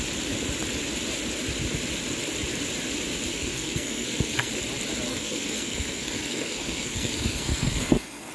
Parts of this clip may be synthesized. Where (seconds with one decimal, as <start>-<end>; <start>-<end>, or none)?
3.3-4.5; 5.1-8.3